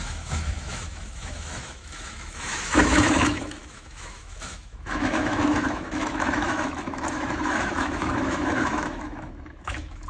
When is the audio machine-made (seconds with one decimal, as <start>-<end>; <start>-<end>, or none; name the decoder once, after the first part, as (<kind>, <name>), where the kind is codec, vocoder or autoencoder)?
0.0-10.1 (autoencoder, DAC-VAE)